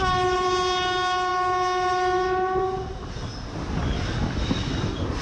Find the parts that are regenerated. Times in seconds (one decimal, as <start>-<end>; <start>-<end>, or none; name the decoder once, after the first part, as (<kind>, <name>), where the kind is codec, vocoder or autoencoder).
none